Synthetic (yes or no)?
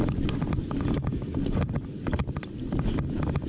no